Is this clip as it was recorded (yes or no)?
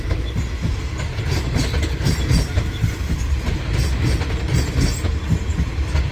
yes